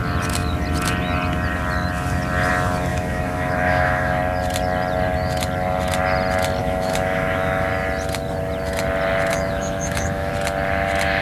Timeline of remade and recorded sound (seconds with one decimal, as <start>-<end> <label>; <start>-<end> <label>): 0.0-2.9 recorded; 2.9-4.2 remade; 4.2-6.6 recorded; 6.6-7.7 remade; 7.7-9.3 recorded; 9.3-10.3 remade; 10.3-11.2 recorded